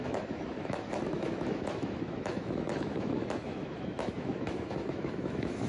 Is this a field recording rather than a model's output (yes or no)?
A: no